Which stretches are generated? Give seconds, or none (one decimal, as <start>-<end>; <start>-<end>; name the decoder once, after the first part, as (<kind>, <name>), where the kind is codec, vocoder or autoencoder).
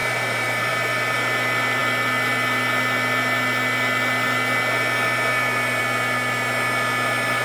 0.0-0.7 (vocoder, BigVGAN v2)